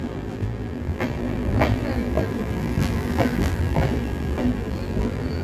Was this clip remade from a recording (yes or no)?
yes